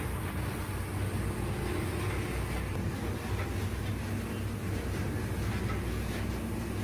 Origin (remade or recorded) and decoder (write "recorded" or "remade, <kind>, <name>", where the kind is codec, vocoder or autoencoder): recorded